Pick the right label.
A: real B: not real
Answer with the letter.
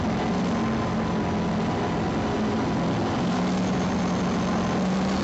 A